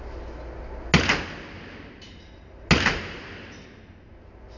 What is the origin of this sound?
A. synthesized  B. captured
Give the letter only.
B